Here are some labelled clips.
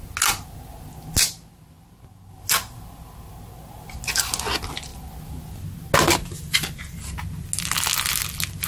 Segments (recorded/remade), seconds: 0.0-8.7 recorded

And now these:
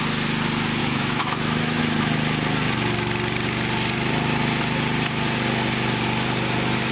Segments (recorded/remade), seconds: 0.0-0.8 recorded; 0.8-1.8 remade; 1.8-6.9 recorded

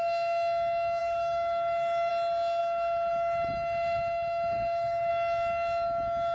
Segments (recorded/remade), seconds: 0.0-1.0 recorded; 1.0-2.1 remade; 2.1-2.6 recorded; 2.6-5.1 remade; 5.1-6.3 recorded

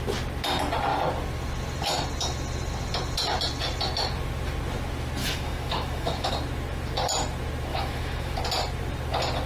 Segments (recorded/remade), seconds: 0.0-5.2 recorded; 5.2-6.3 remade; 6.3-7.7 recorded; 7.7-8.4 remade; 8.4-9.5 recorded

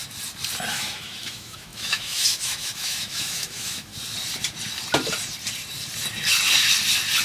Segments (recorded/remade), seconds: 0.0-0.7 recorded; 0.7-3.9 remade; 3.9-7.2 recorded

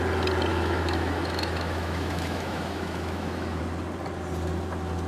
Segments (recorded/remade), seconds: 0.0-0.5 recorded; 0.5-3.6 remade; 3.6-5.1 recorded

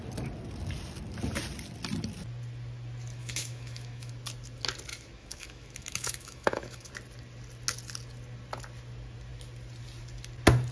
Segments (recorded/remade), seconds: 0.0-3.2 recorded; 3.2-4.1 remade; 4.1-4.9 recorded; 4.9-6.9 remade; 6.9-10.7 recorded

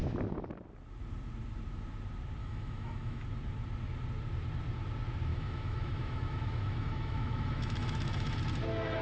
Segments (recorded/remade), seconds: 0.0-2.4 recorded; 2.4-3.2 remade; 3.2-5.3 recorded; 5.3-8.4 remade; 8.4-9.0 recorded